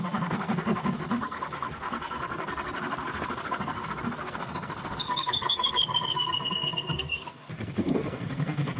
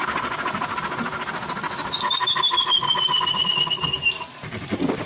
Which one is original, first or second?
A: second